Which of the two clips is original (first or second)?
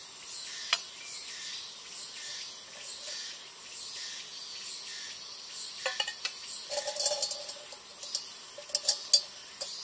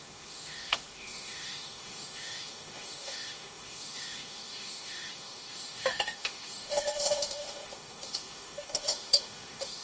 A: first